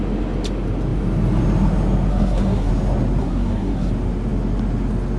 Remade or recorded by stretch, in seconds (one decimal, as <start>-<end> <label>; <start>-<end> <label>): 0.0-2.1 recorded; 2.1-2.7 remade; 2.7-3.2 recorded; 3.2-3.9 remade; 3.9-5.2 recorded